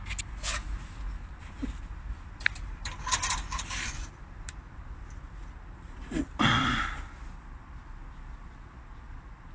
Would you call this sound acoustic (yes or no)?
yes